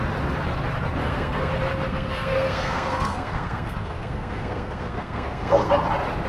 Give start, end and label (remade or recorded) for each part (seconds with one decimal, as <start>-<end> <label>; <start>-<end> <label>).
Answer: 0.0-1.0 recorded; 1.0-1.5 remade; 1.5-1.9 recorded; 1.9-5.7 remade; 5.7-6.3 recorded